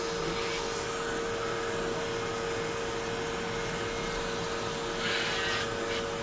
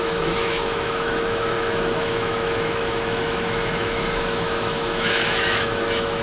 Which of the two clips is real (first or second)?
first